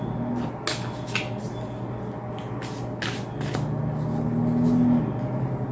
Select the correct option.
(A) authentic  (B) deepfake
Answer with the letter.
A